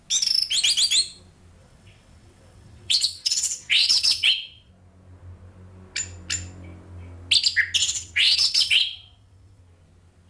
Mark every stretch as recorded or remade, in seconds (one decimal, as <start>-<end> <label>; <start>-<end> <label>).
0.0-1.6 recorded; 1.6-4.7 remade; 4.7-7.8 recorded; 7.8-9.6 remade; 9.6-10.3 recorded